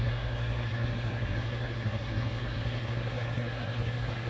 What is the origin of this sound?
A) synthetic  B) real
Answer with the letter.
A